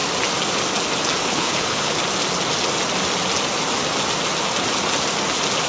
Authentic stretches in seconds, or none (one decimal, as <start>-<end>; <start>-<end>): 0.0-1.2; 2.0-5.7